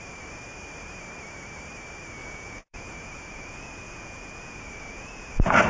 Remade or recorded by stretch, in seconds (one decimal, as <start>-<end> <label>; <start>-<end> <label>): 0.0-2.2 recorded; 2.2-5.7 remade